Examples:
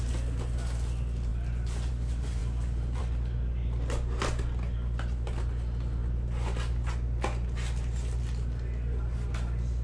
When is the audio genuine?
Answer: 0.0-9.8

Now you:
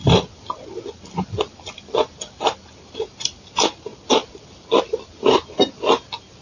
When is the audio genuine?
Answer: 0.0-6.4

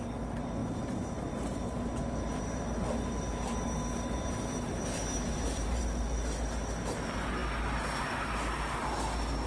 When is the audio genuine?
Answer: 0.0-0.6; 5.8-9.5

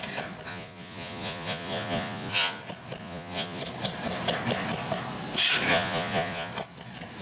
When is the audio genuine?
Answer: 0.0-0.5; 2.6-3.0; 3.6-5.7; 6.5-7.2

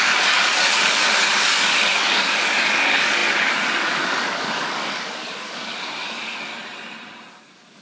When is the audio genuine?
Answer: 6.5-7.3

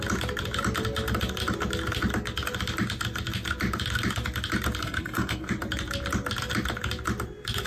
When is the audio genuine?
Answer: 0.0-4.8; 5.5-7.7